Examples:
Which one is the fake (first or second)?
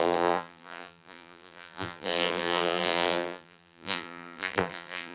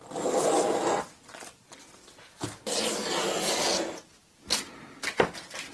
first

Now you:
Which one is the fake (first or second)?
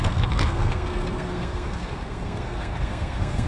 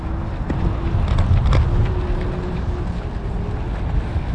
first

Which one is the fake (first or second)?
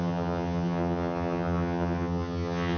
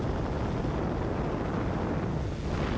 first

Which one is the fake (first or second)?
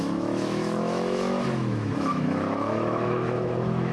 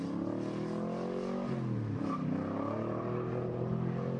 first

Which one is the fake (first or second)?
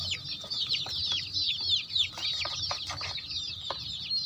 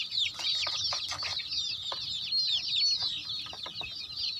first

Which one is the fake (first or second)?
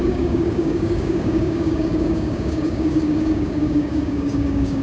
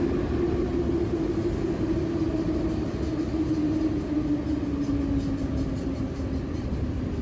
first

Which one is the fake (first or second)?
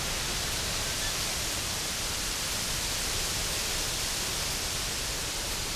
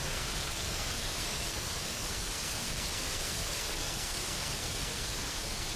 second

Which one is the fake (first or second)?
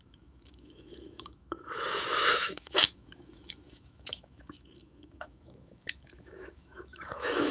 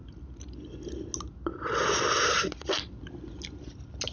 first